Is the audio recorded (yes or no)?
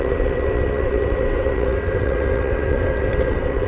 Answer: no